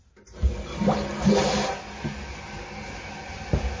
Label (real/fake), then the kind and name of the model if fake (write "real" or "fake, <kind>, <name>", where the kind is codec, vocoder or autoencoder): real